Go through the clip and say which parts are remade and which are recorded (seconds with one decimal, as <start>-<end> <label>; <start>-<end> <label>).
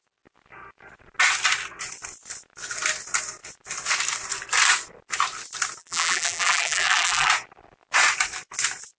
0.0-5.8 recorded; 5.8-7.3 remade; 7.3-9.0 recorded